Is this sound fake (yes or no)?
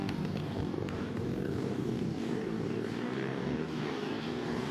yes